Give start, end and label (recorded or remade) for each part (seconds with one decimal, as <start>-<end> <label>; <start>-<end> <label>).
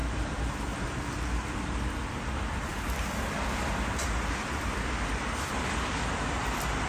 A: 0.0-6.9 remade